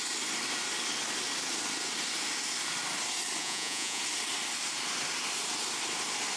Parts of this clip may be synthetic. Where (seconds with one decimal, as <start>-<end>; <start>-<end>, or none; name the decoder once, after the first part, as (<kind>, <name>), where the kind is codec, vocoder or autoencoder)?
3.4-4.0 (vocoder, Vocos)

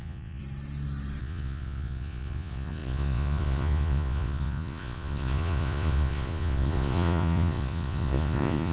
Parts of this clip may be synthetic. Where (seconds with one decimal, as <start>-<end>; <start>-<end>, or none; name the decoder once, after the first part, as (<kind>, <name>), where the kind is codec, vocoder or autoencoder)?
0.0-0.4 (vocoder, Vocos); 1.2-8.7

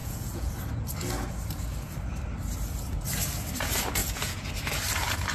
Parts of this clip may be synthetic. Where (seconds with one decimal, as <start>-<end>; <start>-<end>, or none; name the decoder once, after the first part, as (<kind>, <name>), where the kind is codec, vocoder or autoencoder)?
0.0-0.5 (vocoder, Vocos); 4.0-4.5